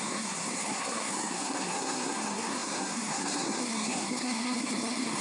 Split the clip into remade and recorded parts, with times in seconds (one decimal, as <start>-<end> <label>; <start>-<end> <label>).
0.0-5.2 remade